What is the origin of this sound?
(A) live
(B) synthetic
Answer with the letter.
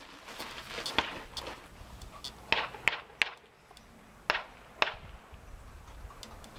A